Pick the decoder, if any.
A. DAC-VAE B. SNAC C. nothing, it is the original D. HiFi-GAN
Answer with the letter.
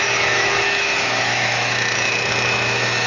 A